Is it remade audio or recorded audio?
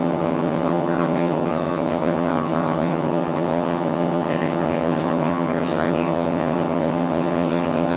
remade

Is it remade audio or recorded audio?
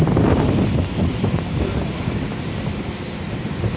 recorded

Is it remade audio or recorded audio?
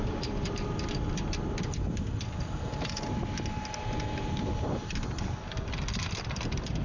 recorded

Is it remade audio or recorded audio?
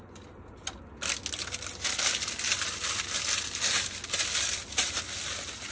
recorded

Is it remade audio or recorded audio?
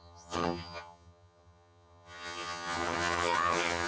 remade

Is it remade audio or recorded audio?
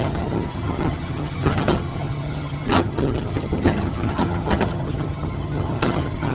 remade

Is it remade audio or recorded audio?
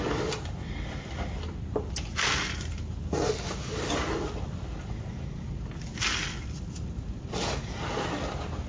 recorded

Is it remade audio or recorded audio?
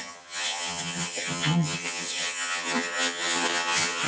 remade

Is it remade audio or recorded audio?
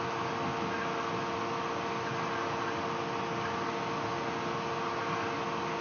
recorded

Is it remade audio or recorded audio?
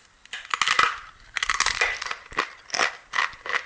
recorded